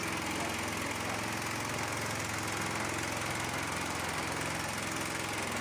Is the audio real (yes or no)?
yes